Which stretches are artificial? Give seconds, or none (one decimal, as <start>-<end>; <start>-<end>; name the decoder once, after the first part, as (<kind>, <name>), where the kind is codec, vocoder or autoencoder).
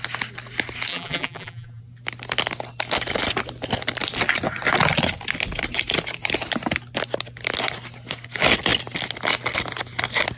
0.9-1.8 (vocoder, BigVGAN v2)